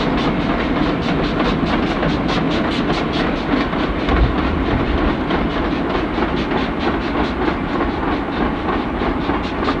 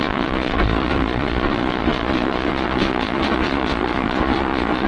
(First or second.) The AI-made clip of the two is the second